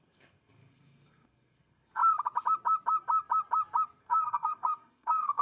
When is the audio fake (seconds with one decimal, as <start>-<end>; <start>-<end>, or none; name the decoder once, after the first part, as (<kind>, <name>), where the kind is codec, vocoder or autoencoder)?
0.0-2.0 (codec, SNAC); 4.0-5.4